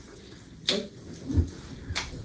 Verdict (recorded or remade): recorded